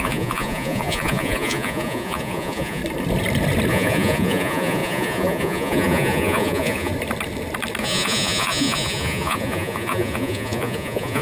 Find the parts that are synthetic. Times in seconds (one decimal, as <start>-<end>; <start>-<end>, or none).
0.0-2.8; 3.7-6.9; 7.8-11.2